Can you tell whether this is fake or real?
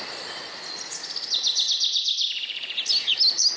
real